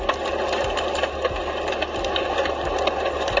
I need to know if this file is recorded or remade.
recorded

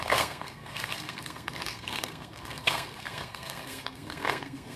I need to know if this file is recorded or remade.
remade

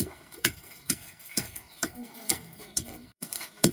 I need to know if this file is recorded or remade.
remade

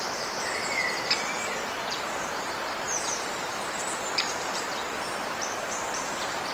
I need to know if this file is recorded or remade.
remade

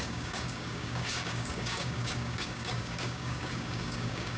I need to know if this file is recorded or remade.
remade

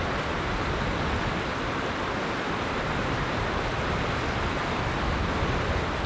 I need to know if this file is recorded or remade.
recorded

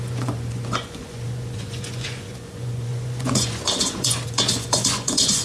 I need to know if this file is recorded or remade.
remade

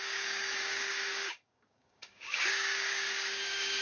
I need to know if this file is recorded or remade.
remade